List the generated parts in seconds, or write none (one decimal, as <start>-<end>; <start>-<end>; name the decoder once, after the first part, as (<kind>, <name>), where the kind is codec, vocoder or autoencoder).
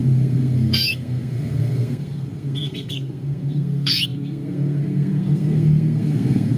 0.0-6.6 (codec, SNAC)